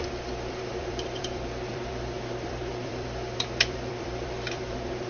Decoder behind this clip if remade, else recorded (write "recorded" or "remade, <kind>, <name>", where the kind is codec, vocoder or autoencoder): remade, vocoder, BigVGAN v2